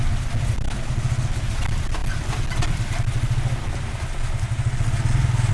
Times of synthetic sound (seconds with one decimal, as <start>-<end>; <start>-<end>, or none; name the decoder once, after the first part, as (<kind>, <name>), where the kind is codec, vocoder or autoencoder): none